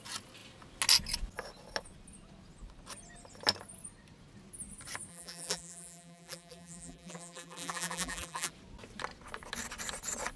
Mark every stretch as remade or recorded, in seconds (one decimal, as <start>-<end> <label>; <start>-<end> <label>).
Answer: 0.0-5.1 recorded; 5.1-8.5 remade; 8.5-10.4 recorded